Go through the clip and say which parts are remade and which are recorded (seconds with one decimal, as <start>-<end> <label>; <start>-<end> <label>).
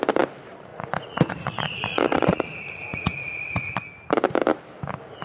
0.0-0.7 recorded; 0.7-3.8 remade; 3.8-5.2 recorded